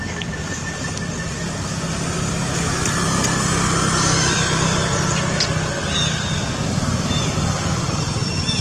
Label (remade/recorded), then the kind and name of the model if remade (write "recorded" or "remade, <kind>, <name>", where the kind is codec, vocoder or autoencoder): recorded